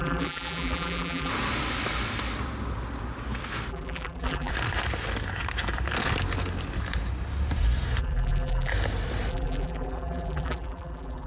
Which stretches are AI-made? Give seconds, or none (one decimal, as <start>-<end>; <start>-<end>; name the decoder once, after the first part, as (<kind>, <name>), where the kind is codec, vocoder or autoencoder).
0.0-1.3 (vocoder, BigVGAN v2); 3.7-4.5; 8.0-8.7; 9.3-11.3